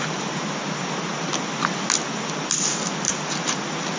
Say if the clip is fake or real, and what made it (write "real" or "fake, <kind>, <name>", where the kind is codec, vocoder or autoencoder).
real